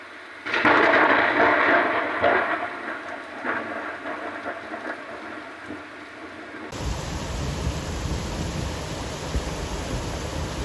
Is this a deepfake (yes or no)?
no